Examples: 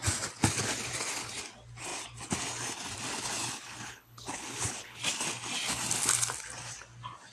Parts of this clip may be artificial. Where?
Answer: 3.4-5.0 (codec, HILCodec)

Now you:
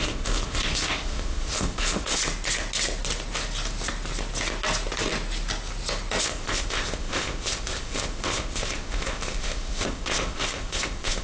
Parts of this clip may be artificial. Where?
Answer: 0.0-2.2 (codec, ZipCodec); 6.2-11.2

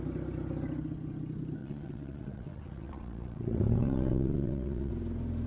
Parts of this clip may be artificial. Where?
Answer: 1.6-4.9 (vocoder, WaveNeXt)